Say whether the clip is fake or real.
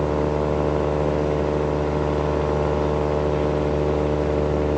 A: real